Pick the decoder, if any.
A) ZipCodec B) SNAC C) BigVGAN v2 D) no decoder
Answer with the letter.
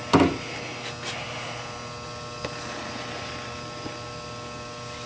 D